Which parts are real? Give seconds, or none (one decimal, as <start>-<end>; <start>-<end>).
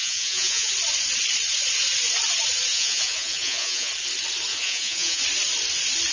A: 0.7-2.7; 3.9-4.5; 5.2-6.1